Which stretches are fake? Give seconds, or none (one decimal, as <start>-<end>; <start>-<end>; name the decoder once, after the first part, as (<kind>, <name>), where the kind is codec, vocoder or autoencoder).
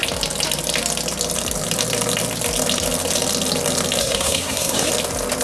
4.0-4.9 (codec, SNAC)